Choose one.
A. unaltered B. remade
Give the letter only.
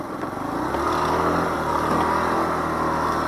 A